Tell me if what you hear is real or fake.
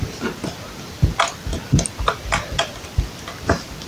real